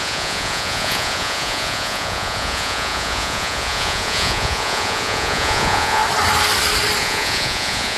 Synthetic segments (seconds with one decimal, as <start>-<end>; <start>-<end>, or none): 0.0-6.0; 7.0-8.0